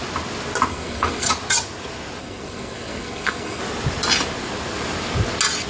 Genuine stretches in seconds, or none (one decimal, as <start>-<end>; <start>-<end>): 0.0-0.7; 1.3-2.2; 3.6-5.7